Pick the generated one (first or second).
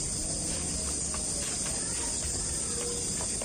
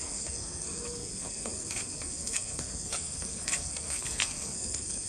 second